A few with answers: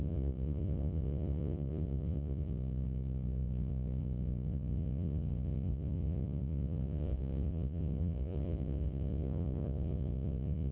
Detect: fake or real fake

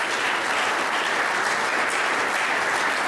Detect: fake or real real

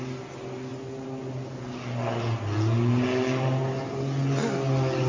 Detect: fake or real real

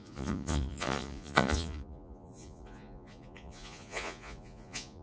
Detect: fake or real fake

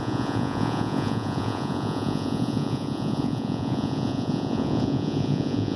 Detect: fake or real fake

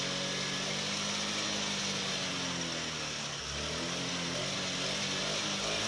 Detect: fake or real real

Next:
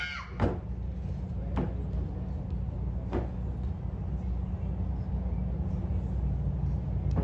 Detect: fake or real real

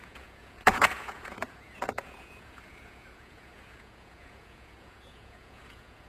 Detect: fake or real fake